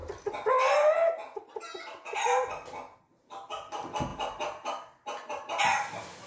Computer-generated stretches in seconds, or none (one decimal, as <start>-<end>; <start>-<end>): none